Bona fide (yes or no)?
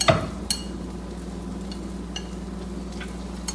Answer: yes